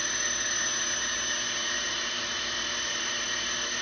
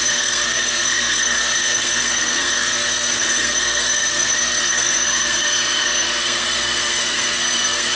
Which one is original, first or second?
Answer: first